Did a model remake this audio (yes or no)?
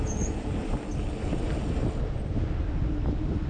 no